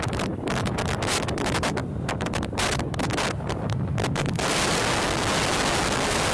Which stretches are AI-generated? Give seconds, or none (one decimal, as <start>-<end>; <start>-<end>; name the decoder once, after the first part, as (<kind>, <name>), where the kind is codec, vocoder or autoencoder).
none